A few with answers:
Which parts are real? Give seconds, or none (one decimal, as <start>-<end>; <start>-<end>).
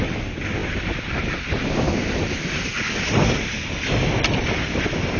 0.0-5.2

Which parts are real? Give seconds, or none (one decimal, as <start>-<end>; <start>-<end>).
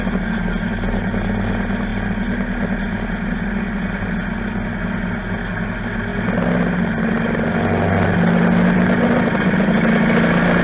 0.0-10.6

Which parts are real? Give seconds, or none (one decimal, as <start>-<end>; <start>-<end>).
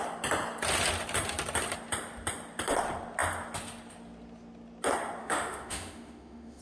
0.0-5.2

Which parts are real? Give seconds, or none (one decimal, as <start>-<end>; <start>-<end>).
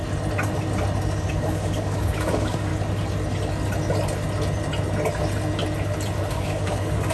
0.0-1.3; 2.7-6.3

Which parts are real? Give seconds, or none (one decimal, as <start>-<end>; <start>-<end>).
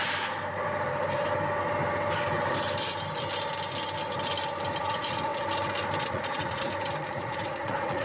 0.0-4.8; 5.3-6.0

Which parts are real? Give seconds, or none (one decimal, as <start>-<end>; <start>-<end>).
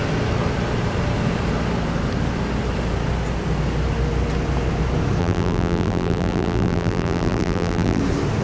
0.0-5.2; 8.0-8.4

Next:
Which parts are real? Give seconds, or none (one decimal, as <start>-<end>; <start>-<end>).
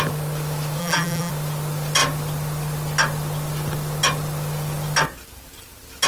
0.0-0.8; 1.3-6.1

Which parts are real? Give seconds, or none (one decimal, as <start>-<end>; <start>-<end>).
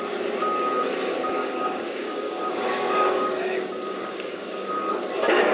0.0-1.4; 4.7-5.5